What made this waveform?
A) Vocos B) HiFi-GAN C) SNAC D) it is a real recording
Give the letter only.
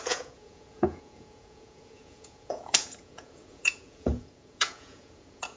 A